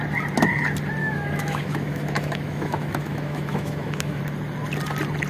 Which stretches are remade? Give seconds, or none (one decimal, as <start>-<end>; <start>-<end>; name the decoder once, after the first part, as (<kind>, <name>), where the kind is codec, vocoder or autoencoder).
1.0-4.2 (autoencoder, DAC-VAE)